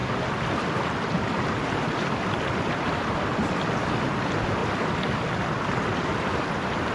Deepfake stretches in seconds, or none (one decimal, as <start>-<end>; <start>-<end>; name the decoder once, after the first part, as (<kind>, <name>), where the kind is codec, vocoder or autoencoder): 0.0-4.1 (vocoder, BigVGAN v2); 4.6-6.9